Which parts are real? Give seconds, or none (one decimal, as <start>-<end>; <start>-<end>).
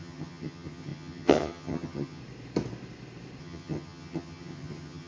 2.2-3.4